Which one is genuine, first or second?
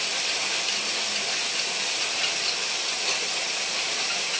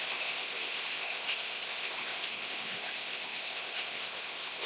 first